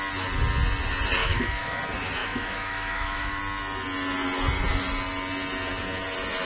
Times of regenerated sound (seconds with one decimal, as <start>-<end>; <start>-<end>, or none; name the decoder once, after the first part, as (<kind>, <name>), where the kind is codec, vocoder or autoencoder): 1.2-1.8 (autoencoder, DAC-VAE); 2.2-3.4